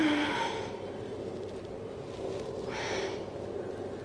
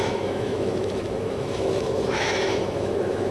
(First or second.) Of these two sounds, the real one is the first